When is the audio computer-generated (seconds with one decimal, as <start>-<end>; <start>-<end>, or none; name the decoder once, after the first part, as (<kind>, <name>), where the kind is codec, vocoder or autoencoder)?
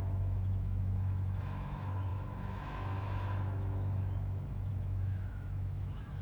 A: 0.0-6.2 (autoencoder, DAC-VAE)